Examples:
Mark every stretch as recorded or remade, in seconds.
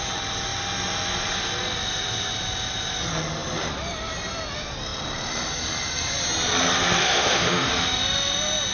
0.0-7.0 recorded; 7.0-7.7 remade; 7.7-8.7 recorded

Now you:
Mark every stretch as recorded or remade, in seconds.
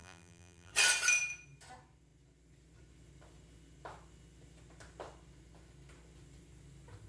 0.0-0.7 remade; 0.7-7.1 recorded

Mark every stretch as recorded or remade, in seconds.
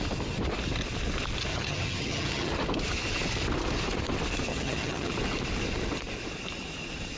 0.0-1.5 recorded; 1.5-2.5 remade; 2.5-4.5 recorded; 4.5-5.1 remade; 5.1-7.2 recorded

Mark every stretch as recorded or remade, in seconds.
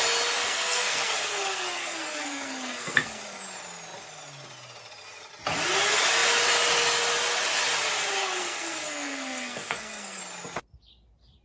0.0-0.4 recorded; 0.4-3.2 remade; 3.2-8.2 recorded; 8.2-10.2 remade; 10.2-11.4 recorded